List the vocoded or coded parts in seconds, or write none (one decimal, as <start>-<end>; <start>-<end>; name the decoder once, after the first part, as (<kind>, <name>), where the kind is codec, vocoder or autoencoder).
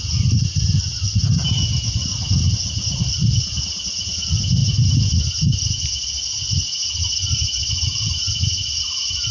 none